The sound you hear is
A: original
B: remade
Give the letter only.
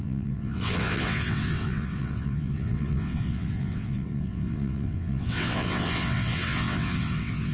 B